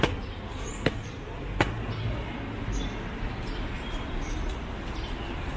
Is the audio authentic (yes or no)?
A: yes